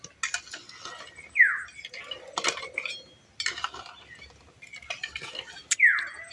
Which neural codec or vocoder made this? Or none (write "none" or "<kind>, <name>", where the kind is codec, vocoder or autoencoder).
none